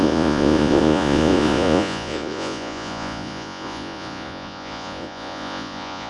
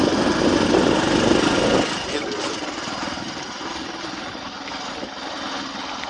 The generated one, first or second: first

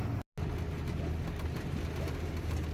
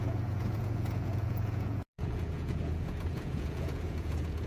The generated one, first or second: second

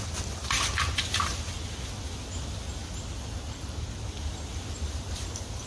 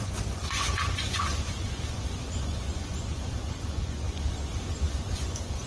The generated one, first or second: second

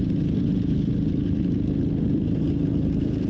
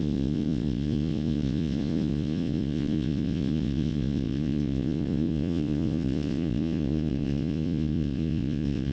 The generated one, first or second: second